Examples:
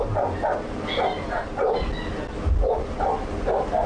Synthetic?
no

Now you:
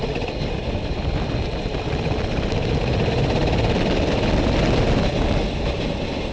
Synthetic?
no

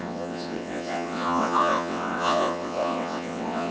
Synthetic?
yes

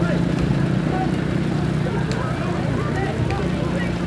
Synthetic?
no